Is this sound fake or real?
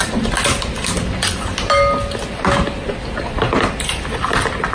real